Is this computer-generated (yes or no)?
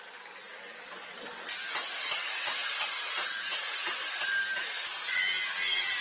no